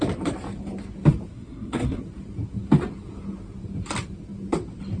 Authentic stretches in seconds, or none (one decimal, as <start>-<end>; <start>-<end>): 0.0-1.3; 2.0-5.0